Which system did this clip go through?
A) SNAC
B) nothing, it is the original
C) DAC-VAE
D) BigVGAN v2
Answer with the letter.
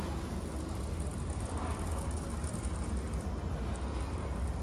B